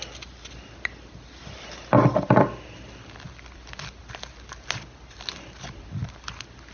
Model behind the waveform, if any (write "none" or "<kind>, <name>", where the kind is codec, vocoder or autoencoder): none